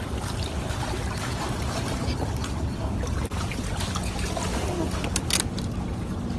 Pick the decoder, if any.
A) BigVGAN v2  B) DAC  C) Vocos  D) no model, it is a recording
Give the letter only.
D